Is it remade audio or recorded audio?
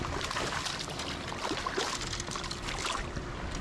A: remade